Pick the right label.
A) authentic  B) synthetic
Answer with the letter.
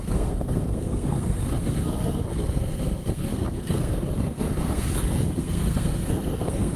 B